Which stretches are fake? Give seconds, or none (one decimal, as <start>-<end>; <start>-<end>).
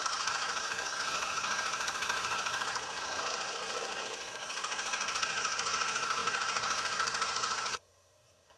0.0-8.6